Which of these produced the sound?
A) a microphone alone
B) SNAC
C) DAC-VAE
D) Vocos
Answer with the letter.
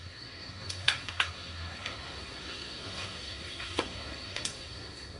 B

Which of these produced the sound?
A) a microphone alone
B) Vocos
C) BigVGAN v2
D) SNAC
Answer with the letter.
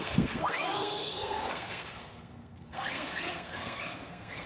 D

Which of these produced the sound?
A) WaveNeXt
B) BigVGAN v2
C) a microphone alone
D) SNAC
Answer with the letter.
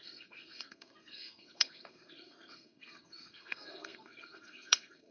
D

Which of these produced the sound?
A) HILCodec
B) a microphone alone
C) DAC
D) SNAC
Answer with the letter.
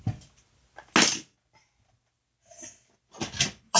B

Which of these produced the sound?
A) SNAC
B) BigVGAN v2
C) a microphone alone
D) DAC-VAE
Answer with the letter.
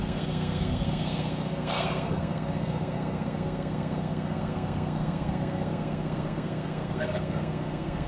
A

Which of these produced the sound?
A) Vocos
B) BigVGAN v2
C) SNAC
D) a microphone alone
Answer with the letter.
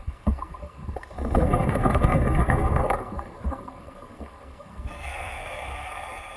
C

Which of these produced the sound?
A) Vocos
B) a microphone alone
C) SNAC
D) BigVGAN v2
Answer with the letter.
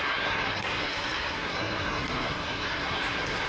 C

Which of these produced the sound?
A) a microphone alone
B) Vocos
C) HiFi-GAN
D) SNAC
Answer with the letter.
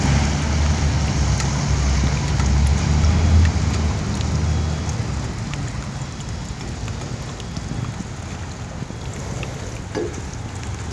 A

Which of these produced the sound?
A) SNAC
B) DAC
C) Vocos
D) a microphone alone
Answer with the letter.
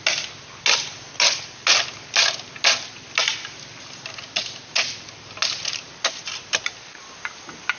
D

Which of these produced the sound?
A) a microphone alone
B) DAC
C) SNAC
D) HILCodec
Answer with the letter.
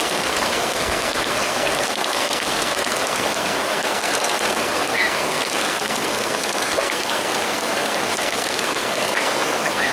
C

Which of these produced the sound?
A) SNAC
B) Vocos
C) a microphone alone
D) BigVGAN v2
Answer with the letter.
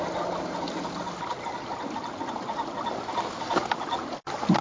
C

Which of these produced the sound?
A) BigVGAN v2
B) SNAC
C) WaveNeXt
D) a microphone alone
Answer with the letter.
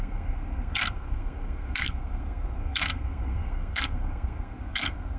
B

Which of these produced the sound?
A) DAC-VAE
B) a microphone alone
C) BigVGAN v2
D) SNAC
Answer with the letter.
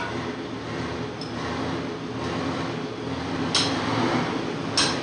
B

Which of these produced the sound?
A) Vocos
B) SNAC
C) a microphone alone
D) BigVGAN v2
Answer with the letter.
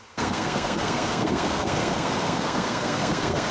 B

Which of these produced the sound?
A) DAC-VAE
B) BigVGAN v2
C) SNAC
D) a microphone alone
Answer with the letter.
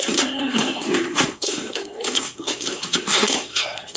C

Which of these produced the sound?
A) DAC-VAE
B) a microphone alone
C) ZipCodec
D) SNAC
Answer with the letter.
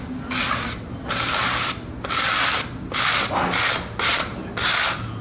B